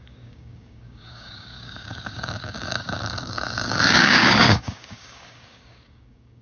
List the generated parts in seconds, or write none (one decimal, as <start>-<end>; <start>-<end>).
0.0-6.4